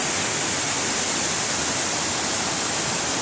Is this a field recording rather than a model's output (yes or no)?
yes